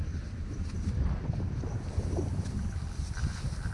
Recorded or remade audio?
remade